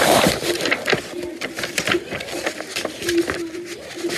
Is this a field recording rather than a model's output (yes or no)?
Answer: yes